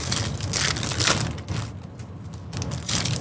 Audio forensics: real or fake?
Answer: real